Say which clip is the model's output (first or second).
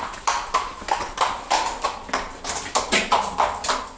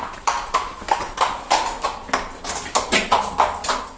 first